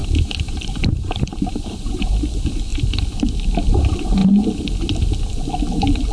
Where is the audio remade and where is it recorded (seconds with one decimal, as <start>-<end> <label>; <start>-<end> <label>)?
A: 0.0-2.0 remade; 2.0-6.1 recorded